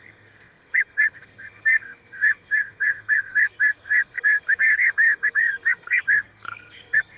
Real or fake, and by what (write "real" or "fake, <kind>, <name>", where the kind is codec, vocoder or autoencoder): fake, codec, SNAC